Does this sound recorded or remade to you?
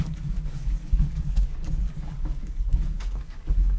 remade